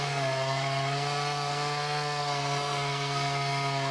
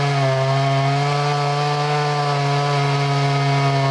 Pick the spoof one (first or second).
first